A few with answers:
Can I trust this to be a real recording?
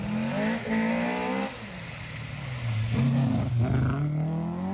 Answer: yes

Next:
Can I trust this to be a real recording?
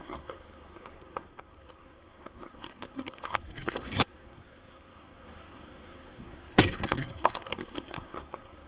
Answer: no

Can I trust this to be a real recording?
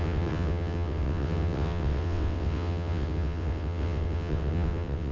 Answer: no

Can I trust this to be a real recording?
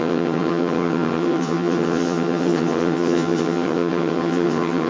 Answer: no